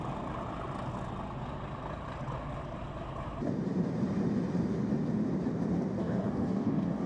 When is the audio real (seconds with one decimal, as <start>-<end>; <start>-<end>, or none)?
0.0-6.0